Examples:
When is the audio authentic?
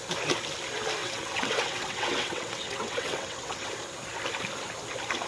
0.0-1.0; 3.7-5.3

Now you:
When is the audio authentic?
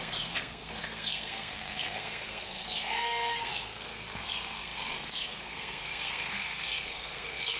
none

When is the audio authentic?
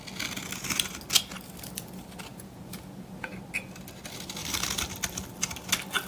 0.0-2.3; 3.3-6.1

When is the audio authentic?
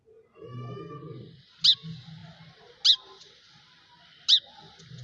0.0-5.0